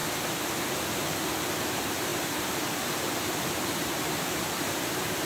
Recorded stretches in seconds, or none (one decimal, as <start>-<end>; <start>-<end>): 0.0-0.7